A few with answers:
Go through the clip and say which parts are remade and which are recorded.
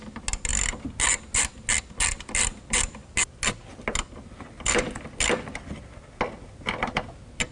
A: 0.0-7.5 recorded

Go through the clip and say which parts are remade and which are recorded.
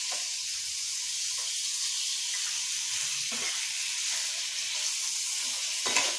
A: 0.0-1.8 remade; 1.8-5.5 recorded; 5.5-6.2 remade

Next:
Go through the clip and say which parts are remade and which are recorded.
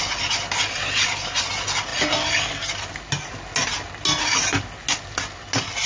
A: 0.0-5.9 recorded